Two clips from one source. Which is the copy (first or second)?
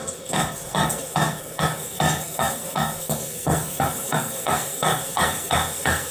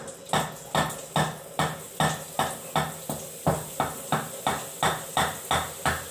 first